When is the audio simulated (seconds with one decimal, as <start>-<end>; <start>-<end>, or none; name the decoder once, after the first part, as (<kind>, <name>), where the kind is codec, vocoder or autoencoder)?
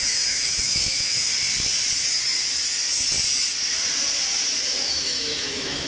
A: 0.0-1.3 (autoencoder, DAC-VAE); 4.8-5.9